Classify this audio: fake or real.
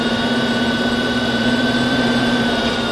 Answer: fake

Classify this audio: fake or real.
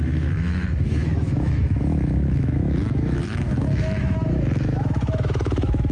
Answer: fake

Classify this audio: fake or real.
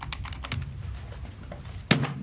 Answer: real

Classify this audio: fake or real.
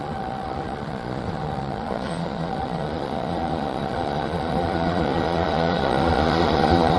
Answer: fake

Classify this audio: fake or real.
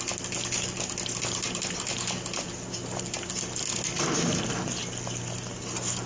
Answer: real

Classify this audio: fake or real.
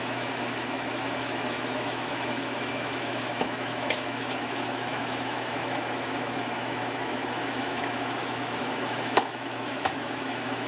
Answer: fake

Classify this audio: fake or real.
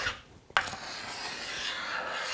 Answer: real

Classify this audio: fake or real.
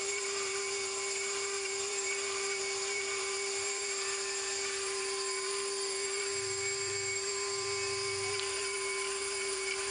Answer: fake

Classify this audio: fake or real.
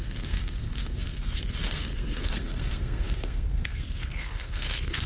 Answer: fake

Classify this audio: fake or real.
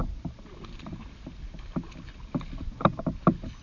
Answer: real